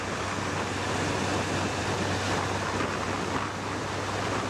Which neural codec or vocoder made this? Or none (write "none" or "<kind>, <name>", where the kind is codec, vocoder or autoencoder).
none